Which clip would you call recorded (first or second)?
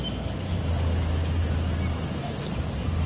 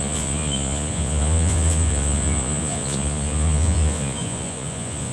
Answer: first